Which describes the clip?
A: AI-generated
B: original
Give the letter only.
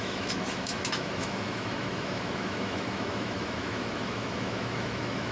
A